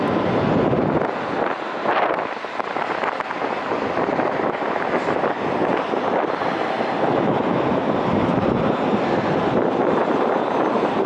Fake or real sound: real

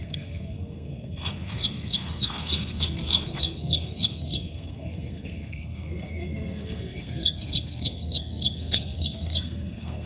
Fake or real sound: fake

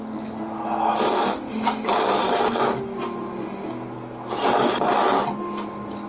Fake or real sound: real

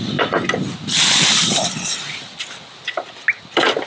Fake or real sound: real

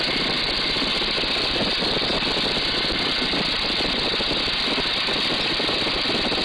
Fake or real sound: real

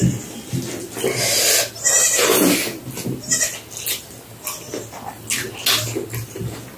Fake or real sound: real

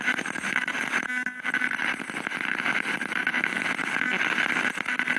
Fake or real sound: real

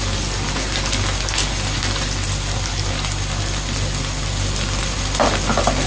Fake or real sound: real